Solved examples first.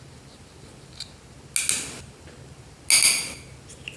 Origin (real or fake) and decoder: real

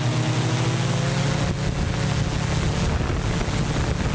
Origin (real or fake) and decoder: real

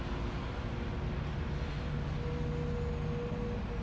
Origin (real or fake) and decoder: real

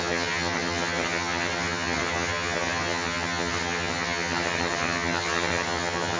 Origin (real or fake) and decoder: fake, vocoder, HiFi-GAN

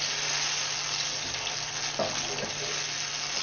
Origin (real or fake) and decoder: real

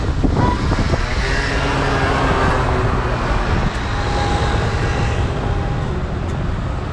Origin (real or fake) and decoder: real